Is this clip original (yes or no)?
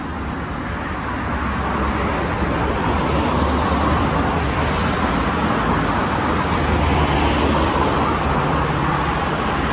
yes